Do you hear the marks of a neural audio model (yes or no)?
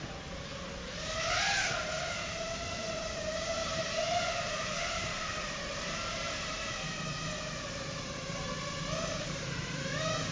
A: yes